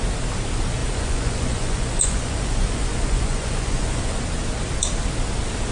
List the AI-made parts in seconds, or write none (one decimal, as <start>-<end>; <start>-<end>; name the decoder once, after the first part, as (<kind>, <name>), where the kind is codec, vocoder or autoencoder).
0.8-4.2 (vocoder, Vocos)